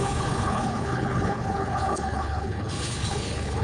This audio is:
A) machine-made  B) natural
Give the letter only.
A